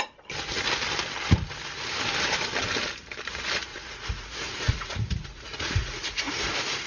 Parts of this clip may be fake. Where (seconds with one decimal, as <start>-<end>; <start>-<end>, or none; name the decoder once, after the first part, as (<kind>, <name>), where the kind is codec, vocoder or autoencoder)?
3.7-6.3 (vocoder, Vocos)